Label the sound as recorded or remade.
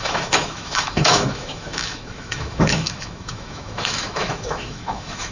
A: remade